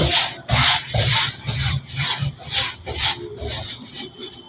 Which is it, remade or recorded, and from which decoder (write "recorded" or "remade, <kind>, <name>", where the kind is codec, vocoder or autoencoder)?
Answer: recorded